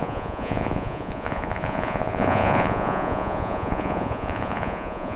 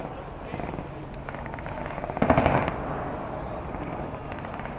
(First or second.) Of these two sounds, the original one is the second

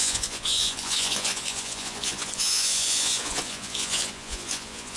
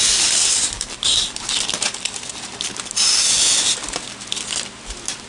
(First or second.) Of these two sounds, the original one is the second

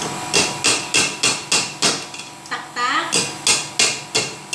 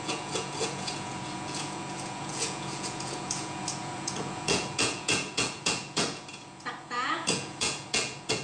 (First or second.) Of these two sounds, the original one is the first